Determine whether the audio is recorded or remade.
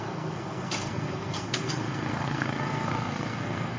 remade